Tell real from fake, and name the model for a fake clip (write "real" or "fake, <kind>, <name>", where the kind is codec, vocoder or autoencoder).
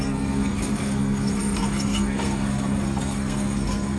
fake, codec, SNAC